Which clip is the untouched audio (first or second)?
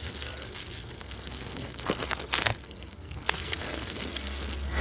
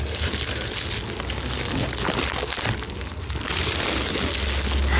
second